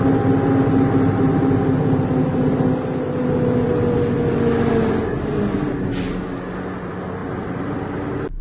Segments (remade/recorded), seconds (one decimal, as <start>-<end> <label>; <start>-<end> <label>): 0.0-7.2 recorded; 7.2-7.8 remade; 7.8-8.4 recorded